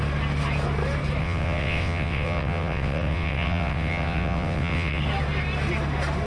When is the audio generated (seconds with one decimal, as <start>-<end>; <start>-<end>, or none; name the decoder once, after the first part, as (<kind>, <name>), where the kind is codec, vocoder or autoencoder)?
1.2-5.0 (vocoder, WaveNeXt)